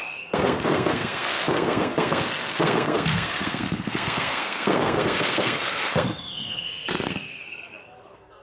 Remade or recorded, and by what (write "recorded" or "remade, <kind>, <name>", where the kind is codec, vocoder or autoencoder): remade, codec, SNAC